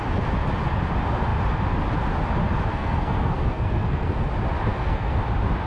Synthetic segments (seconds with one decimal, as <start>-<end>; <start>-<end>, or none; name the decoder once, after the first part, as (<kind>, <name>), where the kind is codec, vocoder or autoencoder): 2.7-4.3 (codec, SNAC); 4.7-5.2

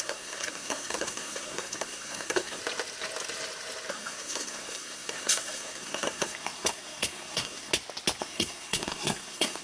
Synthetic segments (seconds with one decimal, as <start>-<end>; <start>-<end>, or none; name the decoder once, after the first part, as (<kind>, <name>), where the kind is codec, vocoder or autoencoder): 0.0-2.6 (codec, SNAC); 3.9-7.7; 8.2-9.6

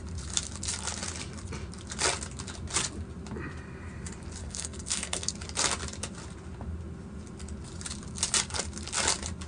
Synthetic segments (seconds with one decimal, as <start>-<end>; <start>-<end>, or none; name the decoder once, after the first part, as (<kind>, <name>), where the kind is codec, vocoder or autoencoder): 4.4-5.3 (codec, SNAC)